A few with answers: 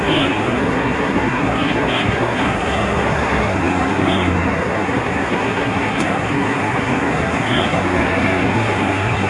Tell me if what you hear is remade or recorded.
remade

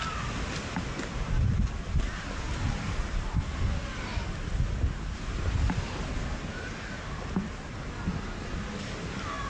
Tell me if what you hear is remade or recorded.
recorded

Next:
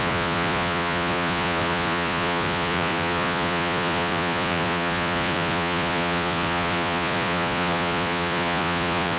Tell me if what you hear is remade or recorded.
remade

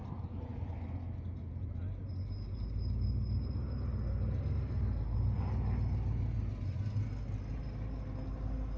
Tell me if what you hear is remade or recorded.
recorded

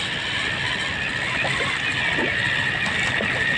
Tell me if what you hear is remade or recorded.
recorded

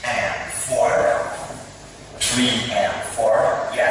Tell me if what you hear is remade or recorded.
remade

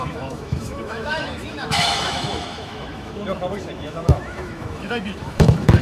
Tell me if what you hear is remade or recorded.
remade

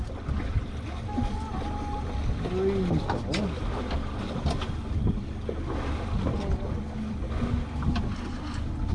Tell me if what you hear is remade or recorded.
recorded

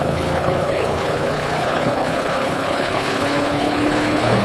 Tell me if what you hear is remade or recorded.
remade